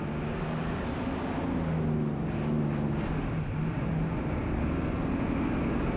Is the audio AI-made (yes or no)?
no